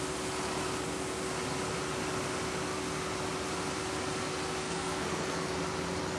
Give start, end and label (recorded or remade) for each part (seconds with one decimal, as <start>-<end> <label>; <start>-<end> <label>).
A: 0.0-4.6 recorded; 4.6-5.5 remade; 5.5-6.2 recorded